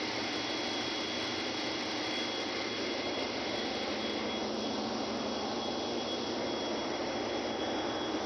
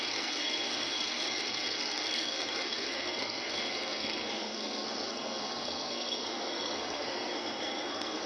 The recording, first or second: first